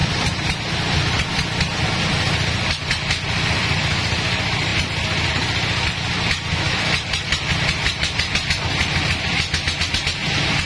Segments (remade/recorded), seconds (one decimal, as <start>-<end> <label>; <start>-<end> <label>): 0.0-10.7 recorded